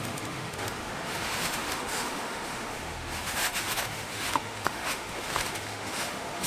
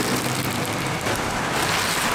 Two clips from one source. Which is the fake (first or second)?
first